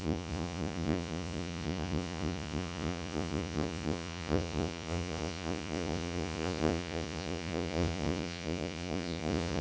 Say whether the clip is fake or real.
fake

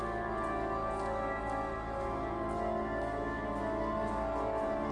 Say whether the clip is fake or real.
real